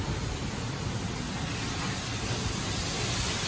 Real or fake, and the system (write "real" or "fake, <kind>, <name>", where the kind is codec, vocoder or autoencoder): real